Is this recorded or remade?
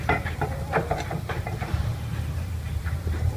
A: remade